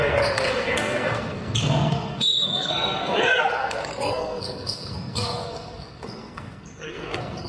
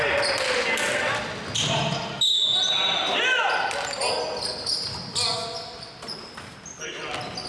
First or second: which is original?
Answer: second